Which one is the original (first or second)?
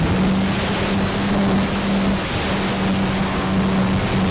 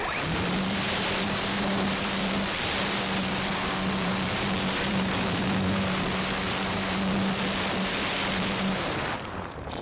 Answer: first